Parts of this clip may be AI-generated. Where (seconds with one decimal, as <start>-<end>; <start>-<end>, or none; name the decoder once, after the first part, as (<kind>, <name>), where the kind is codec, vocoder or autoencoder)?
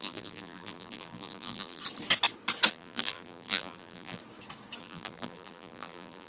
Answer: 0.0-1.8 (vocoder, BigVGAN v2); 2.7-4.2; 4.8-6.3